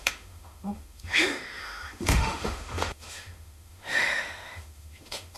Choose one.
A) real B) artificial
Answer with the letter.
B